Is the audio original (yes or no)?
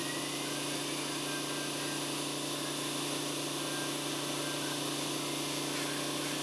yes